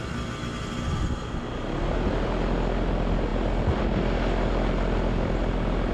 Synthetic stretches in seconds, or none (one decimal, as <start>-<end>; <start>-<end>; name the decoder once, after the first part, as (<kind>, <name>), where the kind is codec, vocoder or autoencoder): none